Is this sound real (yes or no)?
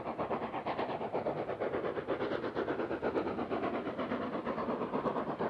no